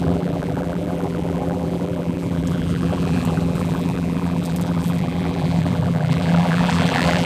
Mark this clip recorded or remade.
remade